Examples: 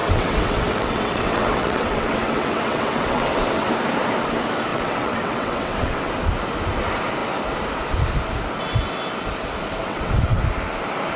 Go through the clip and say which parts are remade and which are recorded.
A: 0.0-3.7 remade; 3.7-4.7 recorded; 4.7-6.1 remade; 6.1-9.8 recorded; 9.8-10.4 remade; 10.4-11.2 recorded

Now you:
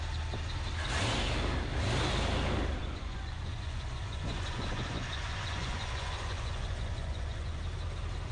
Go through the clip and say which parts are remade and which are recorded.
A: 0.0-2.8 recorded; 2.8-7.6 remade; 7.6-8.3 recorded

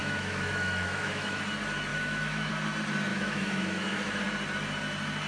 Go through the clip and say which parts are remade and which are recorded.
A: 0.0-1.4 remade; 1.4-1.9 recorded; 1.9-2.5 remade; 2.5-3.1 recorded; 3.1-4.2 remade; 4.2-5.3 recorded